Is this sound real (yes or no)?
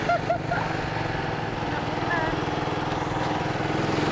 yes